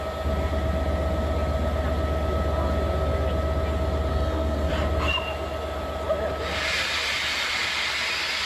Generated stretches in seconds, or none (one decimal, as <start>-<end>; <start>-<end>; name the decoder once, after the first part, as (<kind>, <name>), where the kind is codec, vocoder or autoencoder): 4.1-4.7 (codec, SNAC)